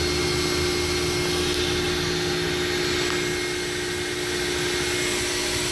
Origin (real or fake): real